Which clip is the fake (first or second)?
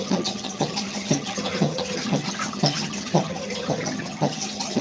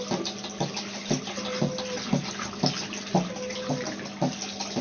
first